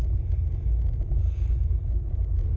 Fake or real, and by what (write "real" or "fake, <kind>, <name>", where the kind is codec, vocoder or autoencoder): real